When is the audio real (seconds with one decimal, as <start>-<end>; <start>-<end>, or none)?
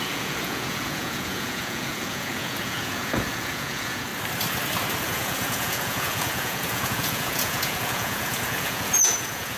4.1-5.0